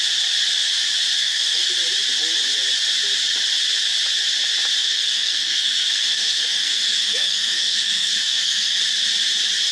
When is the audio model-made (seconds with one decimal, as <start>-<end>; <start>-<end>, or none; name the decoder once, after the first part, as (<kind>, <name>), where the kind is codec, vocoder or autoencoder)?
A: 1.2-1.7 (codec, SNAC); 4.8-8.8